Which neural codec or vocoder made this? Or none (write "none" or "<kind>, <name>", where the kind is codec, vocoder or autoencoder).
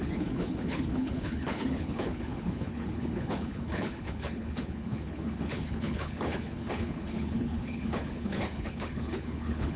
codec, HILCodec